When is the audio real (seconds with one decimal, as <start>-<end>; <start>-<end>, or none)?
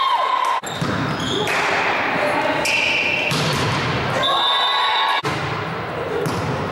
0.0-6.7